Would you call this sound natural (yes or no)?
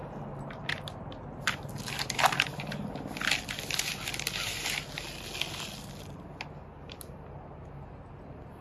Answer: yes